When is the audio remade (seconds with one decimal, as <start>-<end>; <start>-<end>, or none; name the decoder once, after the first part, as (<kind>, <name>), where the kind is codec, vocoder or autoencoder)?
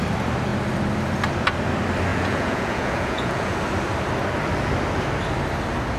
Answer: 2.1-3.5 (vocoder, Vocos)